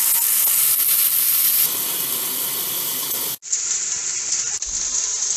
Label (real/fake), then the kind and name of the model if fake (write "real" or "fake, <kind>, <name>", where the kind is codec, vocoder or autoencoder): real